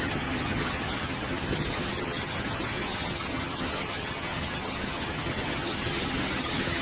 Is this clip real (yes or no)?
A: no